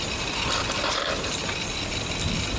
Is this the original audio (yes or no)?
yes